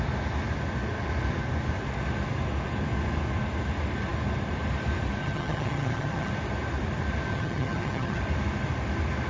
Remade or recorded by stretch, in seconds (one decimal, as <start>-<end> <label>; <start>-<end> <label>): 0.0-5.2 recorded; 5.2-6.3 remade; 6.3-7.3 recorded; 7.3-8.2 remade; 8.2-9.3 recorded